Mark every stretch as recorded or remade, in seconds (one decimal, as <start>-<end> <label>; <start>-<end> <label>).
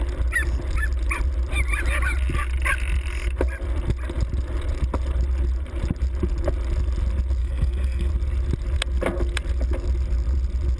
0.0-7.4 recorded; 7.4-8.1 remade; 8.1-10.8 recorded